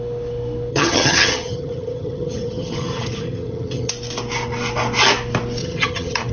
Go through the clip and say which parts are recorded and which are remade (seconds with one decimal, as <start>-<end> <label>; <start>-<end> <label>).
0.0-0.7 recorded; 0.7-3.9 remade; 3.9-5.6 recorded; 5.6-6.3 remade